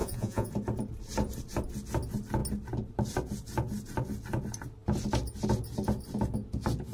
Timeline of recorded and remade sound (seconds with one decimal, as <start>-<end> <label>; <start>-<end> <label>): 0.0-0.5 remade; 0.5-6.9 recorded